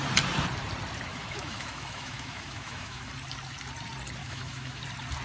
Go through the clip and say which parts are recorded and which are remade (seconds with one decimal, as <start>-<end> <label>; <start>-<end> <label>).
0.0-1.1 recorded; 1.1-3.1 remade; 3.1-4.2 recorded; 4.2-4.8 remade; 4.8-5.2 recorded